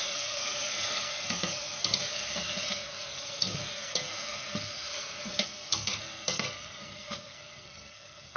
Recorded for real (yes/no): no